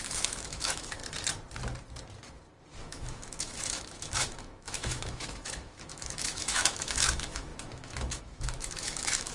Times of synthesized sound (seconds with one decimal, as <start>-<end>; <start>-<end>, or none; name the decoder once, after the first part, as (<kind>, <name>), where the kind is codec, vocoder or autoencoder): 0.0-1.0 (autoencoder, DAC-VAE); 2.8-9.3